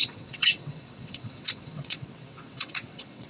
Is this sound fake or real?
fake